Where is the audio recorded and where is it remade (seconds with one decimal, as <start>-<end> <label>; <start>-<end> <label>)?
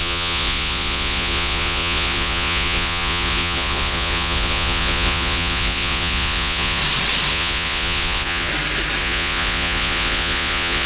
0.0-6.8 remade; 6.8-7.3 recorded; 7.3-8.5 remade; 8.5-9.0 recorded; 9.0-10.9 remade